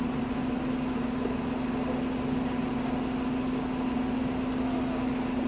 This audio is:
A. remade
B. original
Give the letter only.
B